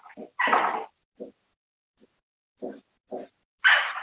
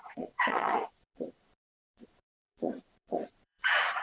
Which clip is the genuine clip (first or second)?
first